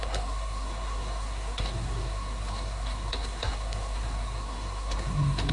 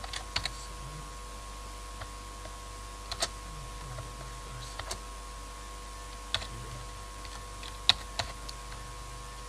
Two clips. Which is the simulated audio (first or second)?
first